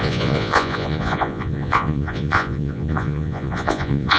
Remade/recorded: remade